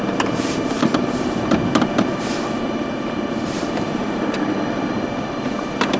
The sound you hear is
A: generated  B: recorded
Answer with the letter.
A